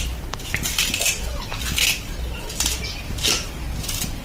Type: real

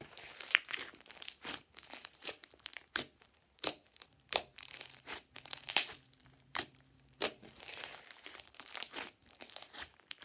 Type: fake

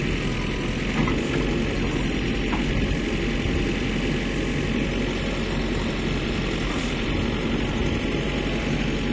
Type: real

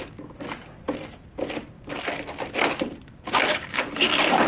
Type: real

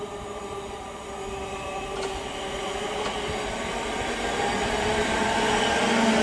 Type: real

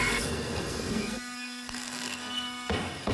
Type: fake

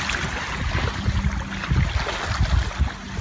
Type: real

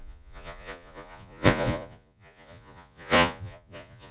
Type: fake